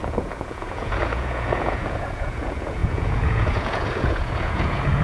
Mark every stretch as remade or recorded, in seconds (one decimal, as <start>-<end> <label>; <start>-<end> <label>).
0.0-5.0 remade